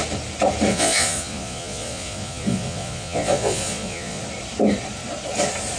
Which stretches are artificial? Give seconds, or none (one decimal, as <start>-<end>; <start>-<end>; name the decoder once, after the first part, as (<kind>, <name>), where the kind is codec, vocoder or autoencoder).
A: 0.7-4.2 (vocoder, Vocos)